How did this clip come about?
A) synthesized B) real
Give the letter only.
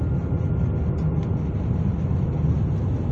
B